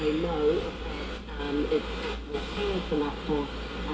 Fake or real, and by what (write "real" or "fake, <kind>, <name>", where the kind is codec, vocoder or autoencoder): real